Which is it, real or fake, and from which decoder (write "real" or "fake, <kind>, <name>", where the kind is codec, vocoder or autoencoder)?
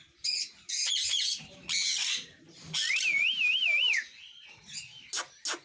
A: real